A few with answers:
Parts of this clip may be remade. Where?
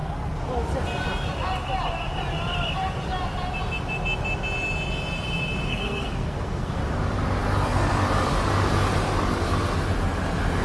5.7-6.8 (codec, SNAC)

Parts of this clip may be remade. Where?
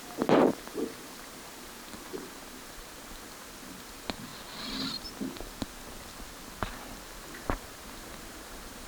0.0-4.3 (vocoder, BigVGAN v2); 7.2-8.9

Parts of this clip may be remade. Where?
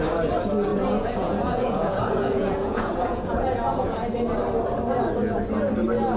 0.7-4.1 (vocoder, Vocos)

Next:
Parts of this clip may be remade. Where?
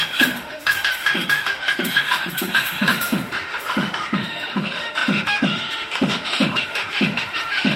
0.0-7.8 (autoencoder, DAC-VAE)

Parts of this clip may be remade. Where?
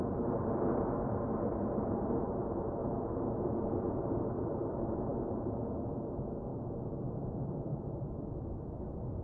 0.0-2.8 (vocoder, BigVGAN v2); 3.4-5.1; 5.6-6.5; 7.3-9.2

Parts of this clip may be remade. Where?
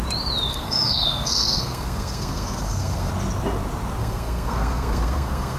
0.5-3.1 (codec, SNAC); 4.0-5.6